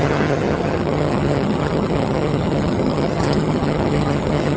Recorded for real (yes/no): no